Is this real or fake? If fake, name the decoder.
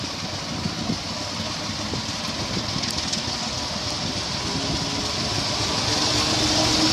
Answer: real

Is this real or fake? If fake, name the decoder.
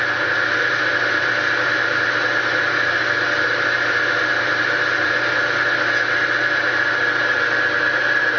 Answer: real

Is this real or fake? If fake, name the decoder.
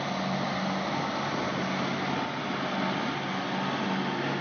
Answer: real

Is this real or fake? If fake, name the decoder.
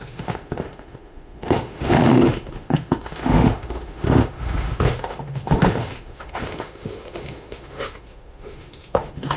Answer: fake, autoencoder, DAC-VAE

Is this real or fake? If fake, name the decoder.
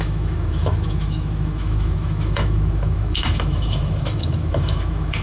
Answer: fake, autoencoder, DAC-VAE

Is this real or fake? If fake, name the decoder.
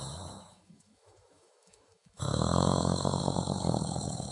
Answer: fake, autoencoder, DAC-VAE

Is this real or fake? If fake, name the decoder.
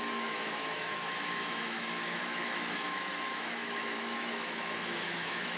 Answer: fake, autoencoder, DAC-VAE